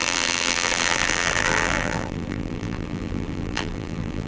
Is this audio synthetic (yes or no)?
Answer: yes